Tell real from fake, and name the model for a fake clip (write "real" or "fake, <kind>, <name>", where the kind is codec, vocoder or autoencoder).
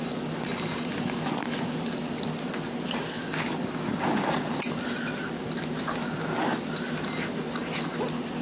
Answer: real